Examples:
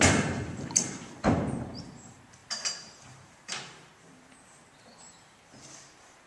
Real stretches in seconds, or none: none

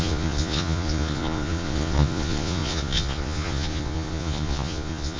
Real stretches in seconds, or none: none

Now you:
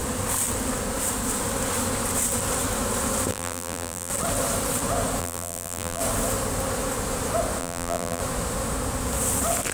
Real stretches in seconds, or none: 0.0-3.3; 4.1-5.2; 6.0-7.6; 8.2-9.7

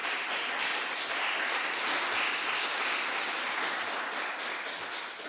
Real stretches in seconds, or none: 0.0-5.3